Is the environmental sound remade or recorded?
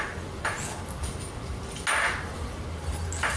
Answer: recorded